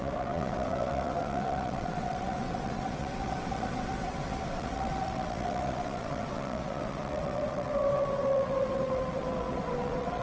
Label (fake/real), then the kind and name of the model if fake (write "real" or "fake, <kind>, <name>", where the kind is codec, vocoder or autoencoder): fake, vocoder, WaveNeXt